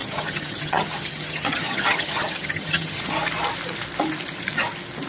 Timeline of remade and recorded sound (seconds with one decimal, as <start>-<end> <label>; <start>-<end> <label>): 0.0-3.1 remade; 3.1-5.1 recorded